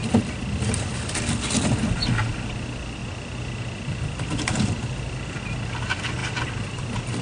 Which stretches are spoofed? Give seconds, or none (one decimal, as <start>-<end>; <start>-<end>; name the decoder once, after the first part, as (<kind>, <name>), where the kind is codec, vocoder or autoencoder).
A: none